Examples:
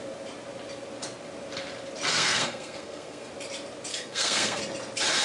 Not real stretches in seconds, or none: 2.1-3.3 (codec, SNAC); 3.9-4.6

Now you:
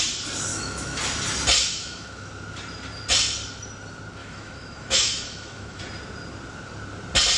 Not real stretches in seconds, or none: 0.5-1.0 (autoencoder, DAC-VAE); 1.7-2.3; 4.2-5.8

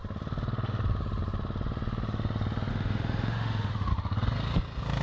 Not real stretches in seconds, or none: 2.7-3.9 (autoencoder, DAC-VAE)

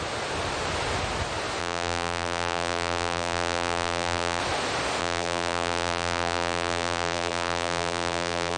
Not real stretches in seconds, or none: 1.6-4.4 (vocoder, BigVGAN v2); 5.0-8.6

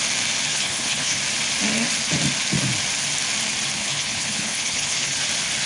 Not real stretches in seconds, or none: 0.5-1.2 (codec, HILCodec); 3.8-5.2

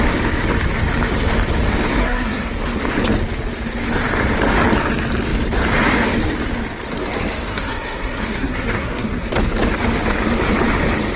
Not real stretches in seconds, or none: 2.0-2.5 (codec, SNAC); 7.5-9.3